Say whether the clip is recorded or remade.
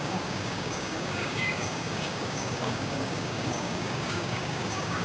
remade